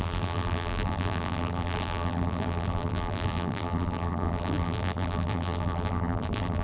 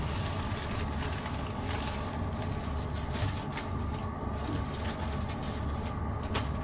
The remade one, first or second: first